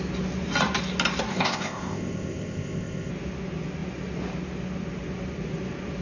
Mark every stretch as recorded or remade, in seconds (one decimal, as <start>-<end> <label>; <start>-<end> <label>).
0.0-1.3 recorded; 1.3-3.1 remade; 3.1-6.0 recorded